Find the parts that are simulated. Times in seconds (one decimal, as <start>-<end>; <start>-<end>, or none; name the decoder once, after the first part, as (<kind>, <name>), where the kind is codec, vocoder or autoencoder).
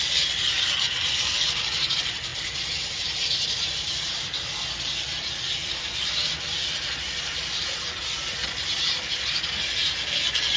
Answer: 0.0-2.3 (vocoder, BigVGAN v2); 2.9-9.8